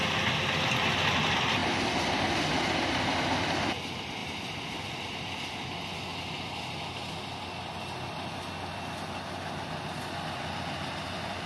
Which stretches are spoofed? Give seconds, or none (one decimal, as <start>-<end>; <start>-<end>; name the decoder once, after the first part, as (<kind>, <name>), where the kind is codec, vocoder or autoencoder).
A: none